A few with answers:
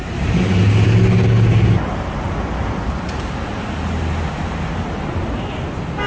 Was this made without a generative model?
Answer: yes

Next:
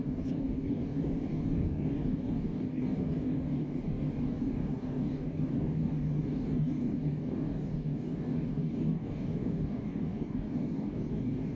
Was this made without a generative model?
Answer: no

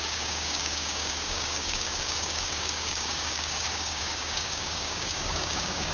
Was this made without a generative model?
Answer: no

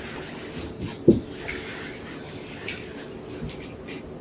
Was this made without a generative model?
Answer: yes